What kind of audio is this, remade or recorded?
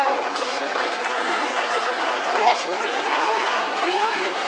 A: remade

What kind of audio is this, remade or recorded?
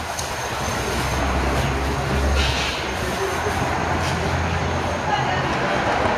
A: recorded